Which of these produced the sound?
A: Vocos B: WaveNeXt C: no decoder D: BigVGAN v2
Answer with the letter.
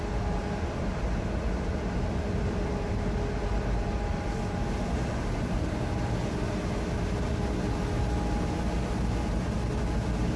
C